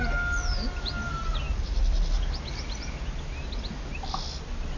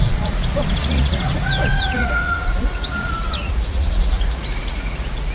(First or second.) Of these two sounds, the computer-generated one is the second